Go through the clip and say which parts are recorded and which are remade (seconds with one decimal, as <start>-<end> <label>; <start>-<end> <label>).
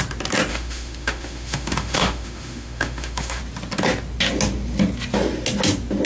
0.0-0.5 recorded; 0.5-3.4 remade; 3.4-6.1 recorded